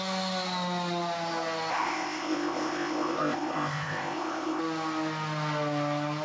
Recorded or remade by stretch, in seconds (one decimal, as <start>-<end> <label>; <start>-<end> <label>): 0.0-1.7 recorded; 1.7-4.6 remade; 4.6-6.2 recorded